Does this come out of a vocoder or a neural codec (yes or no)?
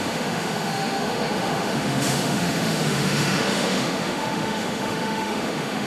yes